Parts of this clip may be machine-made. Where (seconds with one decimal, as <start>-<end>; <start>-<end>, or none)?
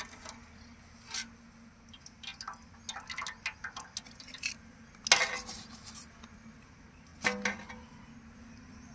none